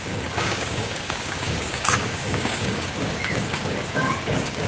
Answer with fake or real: fake